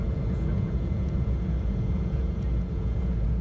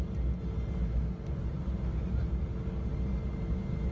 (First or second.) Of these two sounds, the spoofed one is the first